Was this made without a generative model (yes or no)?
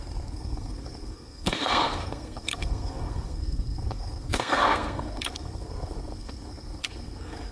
no